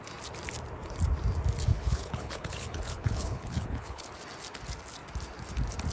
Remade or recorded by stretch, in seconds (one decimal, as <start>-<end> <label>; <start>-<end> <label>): 0.0-1.7 recorded; 1.7-4.1 remade; 4.1-5.9 recorded